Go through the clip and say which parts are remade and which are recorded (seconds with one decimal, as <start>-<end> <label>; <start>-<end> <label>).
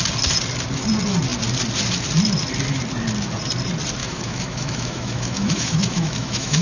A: 0.0-4.0 recorded; 4.0-6.6 remade